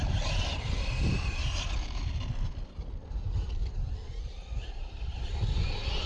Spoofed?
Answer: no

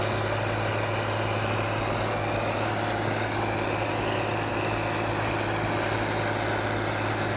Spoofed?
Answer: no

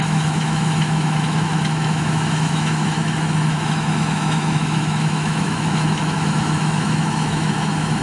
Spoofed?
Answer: yes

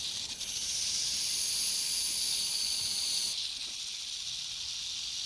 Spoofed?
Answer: no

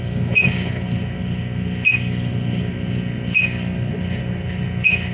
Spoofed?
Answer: no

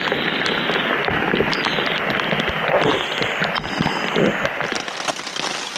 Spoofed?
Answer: no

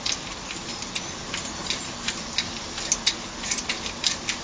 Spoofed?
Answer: no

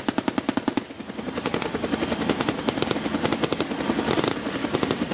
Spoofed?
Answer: no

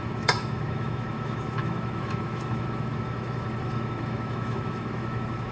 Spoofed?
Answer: yes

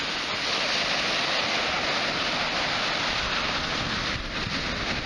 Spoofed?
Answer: no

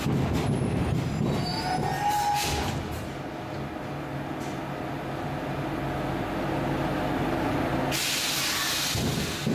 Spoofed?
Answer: no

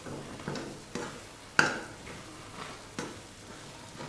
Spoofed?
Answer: no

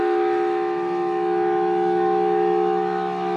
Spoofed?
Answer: yes